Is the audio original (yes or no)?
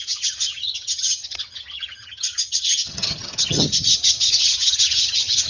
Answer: no